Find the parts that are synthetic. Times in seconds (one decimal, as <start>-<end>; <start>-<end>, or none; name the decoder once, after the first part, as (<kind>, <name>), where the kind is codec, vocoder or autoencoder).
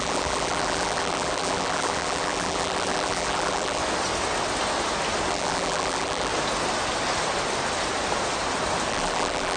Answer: 0.0-3.8 (vocoder, BigVGAN v2); 5.3-6.3; 8.9-9.6